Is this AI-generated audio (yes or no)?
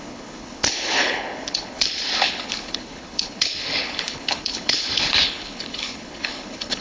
yes